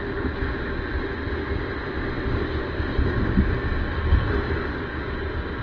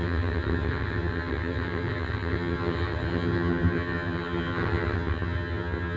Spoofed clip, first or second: second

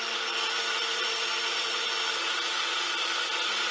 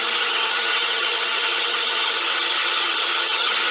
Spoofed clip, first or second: second